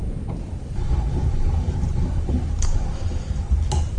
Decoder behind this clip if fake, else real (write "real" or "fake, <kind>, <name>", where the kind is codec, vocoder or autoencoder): real